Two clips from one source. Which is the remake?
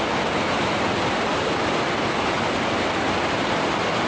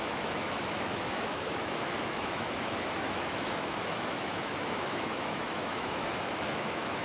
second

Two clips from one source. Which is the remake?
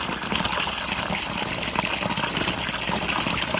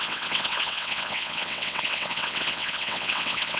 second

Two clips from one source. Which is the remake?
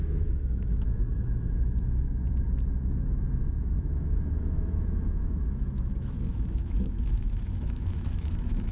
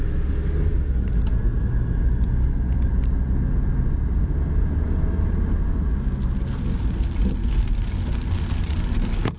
first